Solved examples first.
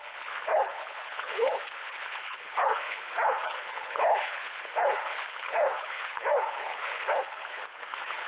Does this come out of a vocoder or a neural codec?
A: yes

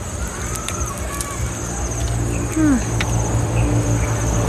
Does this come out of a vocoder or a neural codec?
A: no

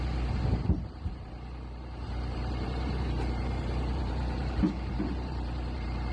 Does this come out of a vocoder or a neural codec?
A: yes